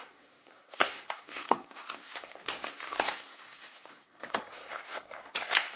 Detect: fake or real fake